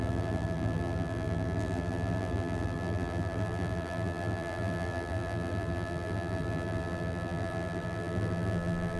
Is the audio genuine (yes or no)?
no